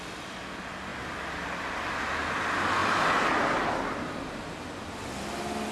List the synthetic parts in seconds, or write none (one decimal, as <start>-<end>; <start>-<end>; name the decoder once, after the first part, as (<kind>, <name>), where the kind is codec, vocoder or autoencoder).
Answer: none